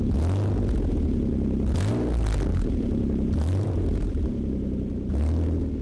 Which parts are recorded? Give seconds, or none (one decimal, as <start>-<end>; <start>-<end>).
0.0-2.5; 5.1-5.8